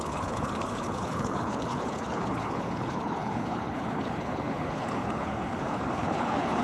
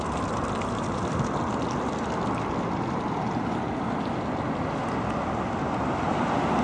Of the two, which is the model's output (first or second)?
first